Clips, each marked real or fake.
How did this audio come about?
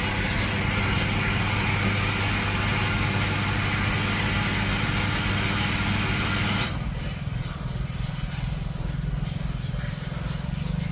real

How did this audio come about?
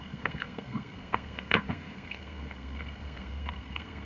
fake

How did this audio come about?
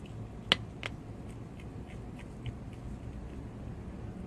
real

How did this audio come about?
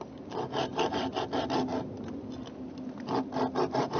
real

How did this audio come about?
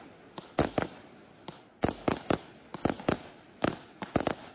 real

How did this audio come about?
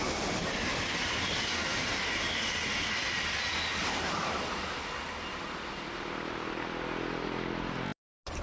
real